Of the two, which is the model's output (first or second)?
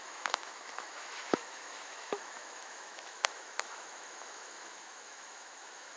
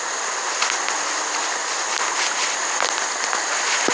first